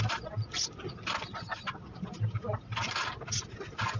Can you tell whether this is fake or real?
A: real